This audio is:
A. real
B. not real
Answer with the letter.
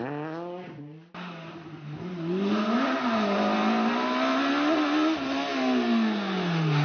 A